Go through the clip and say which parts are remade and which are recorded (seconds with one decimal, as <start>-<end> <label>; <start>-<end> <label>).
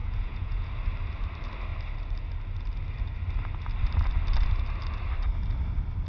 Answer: 0.0-0.7 remade; 0.7-6.1 recorded